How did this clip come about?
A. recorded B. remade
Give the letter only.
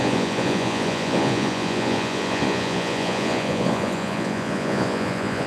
B